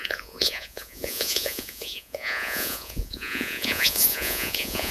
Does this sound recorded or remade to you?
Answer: remade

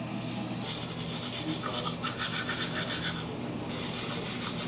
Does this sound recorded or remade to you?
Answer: recorded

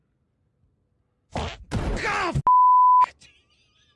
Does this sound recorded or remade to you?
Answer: recorded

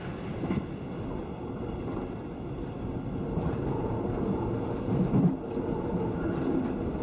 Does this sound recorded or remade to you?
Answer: recorded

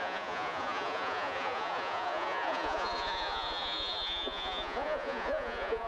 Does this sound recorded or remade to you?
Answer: remade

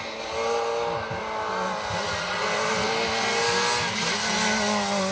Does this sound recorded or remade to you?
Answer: recorded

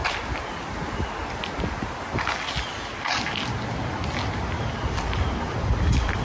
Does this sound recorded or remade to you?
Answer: recorded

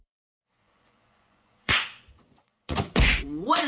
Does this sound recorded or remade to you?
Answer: remade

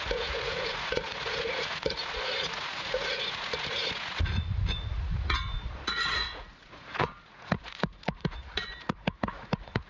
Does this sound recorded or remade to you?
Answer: remade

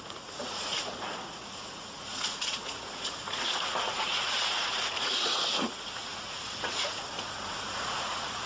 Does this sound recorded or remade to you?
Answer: remade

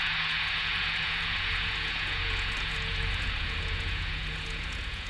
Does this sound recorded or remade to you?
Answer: remade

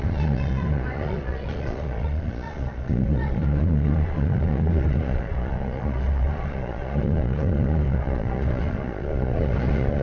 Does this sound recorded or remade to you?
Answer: remade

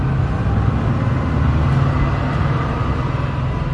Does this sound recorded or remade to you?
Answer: recorded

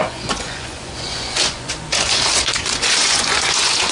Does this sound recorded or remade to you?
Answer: remade